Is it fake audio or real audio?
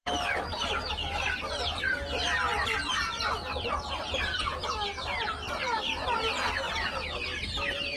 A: fake